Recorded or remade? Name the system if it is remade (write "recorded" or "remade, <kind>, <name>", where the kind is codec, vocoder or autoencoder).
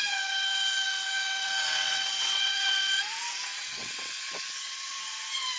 remade, vocoder, WaveNeXt